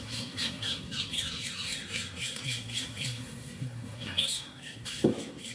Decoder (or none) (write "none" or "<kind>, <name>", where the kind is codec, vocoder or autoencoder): codec, SNAC